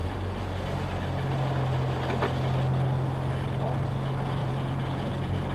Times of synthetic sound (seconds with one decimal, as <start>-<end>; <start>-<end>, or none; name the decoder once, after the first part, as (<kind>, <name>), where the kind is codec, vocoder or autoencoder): 4.4-5.1 (vocoder, Vocos)